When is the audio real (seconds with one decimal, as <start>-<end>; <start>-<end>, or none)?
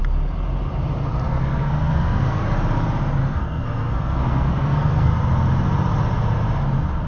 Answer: 0.0-1.3; 2.4-3.2; 5.1-7.1